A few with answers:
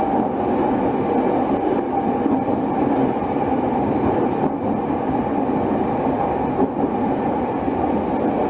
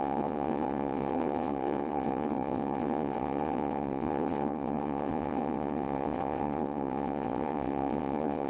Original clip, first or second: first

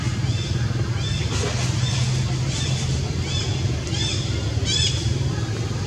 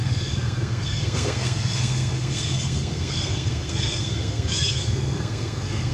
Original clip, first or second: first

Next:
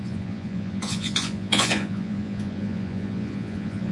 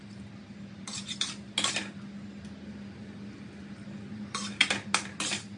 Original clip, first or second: second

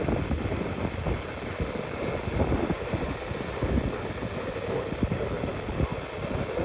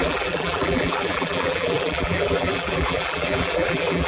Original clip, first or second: first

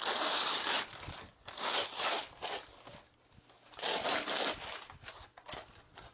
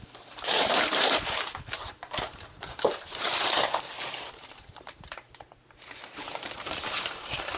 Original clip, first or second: first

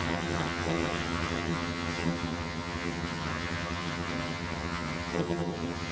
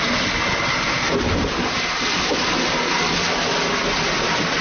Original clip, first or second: second